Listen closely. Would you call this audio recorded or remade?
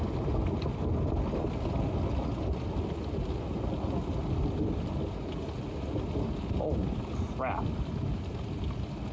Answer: recorded